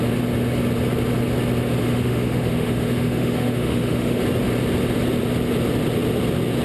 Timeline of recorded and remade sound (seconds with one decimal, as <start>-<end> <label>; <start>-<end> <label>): 0.0-1.8 recorded; 1.8-4.2 remade; 4.2-6.6 recorded